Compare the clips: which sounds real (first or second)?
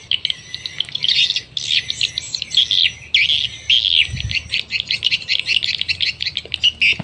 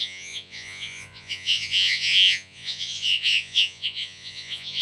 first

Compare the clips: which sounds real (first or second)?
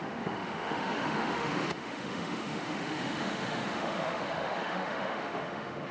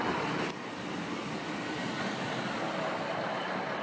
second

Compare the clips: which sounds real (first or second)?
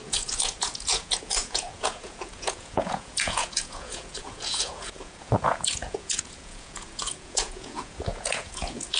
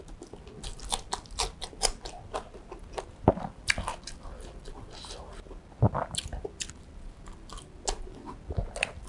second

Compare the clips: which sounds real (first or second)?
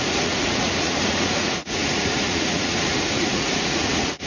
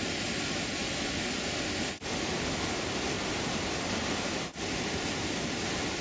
second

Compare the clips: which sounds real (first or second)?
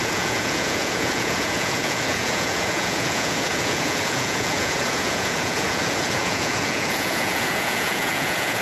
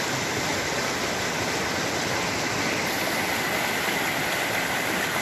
second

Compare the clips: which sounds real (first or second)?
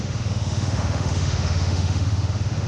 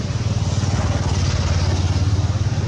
second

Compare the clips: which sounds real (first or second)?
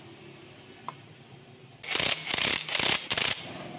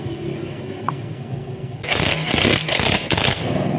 first